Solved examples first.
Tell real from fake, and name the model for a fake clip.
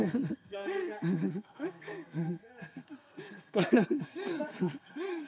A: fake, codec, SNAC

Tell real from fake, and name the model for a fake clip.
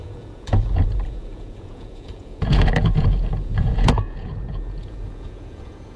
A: fake, vocoder, Vocos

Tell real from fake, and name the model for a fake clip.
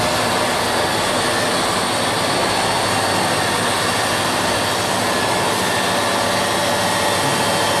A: real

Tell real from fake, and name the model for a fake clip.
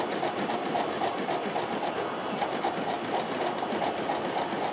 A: real